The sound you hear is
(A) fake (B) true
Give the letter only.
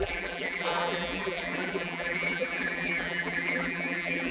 A